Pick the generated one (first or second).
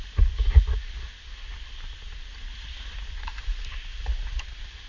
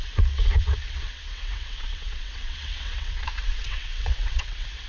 second